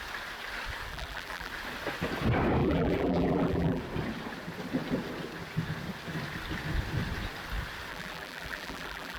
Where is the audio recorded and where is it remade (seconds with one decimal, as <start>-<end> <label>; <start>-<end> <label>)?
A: 0.0-0.9 recorded; 0.9-1.5 remade; 1.5-2.6 recorded; 2.6-3.8 remade; 3.8-7.9 recorded; 7.9-9.2 remade